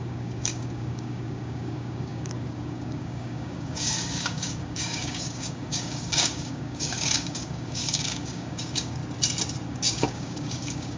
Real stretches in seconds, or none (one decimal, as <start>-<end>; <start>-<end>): 9.0-9.7